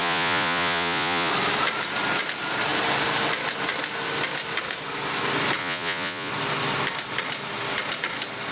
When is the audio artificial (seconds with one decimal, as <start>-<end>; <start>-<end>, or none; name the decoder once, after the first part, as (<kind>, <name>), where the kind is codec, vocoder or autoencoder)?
0.0-1.3 (vocoder, Vocos); 5.6-6.3